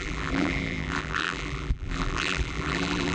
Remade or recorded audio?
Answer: remade